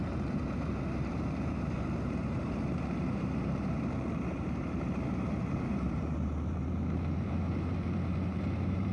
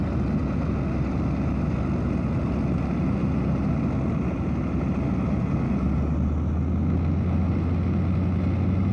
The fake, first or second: first